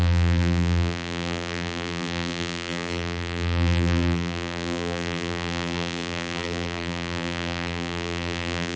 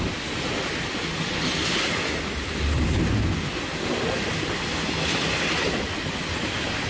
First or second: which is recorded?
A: second